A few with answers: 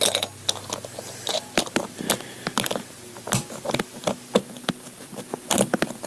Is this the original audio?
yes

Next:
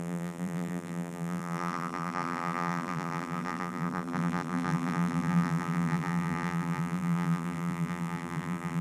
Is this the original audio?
no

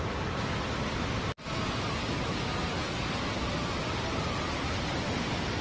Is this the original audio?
yes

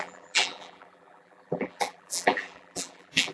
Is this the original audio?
no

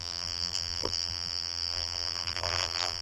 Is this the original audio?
no